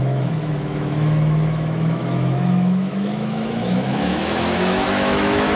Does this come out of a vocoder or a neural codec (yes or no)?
yes